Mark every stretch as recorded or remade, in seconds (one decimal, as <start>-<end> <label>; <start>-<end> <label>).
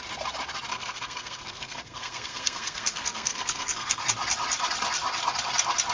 0.0-0.7 recorded; 0.7-4.0 remade; 4.0-5.9 recorded